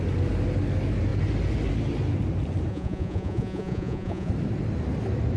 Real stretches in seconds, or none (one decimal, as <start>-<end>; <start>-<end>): 0.0-2.7; 4.3-5.4